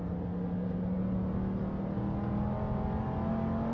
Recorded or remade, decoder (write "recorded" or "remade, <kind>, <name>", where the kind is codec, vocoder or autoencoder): recorded